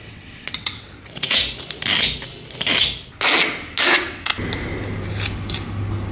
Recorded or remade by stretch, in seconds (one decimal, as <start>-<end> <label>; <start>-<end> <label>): 0.0-1.4 remade; 1.4-3.9 recorded; 3.9-4.3 remade; 4.3-6.1 recorded